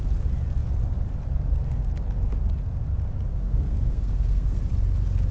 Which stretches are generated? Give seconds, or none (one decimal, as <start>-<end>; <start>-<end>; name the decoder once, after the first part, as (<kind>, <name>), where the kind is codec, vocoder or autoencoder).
3.3-4.6 (codec, SNAC)